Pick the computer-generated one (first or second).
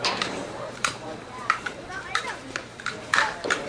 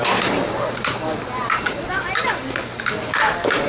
first